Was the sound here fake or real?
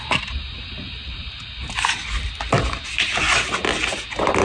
real